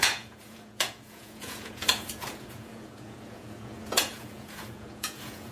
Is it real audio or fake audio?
fake